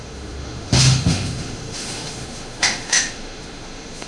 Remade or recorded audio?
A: remade